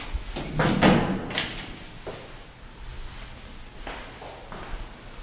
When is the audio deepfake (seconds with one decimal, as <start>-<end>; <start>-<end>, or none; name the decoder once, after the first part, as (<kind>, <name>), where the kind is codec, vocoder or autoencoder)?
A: none